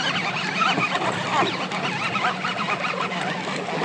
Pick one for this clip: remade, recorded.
recorded